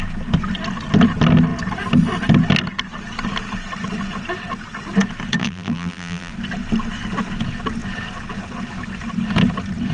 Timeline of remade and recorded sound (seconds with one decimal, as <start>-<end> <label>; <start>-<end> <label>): 0.0-5.4 recorded; 5.4-6.3 remade; 6.3-9.9 recorded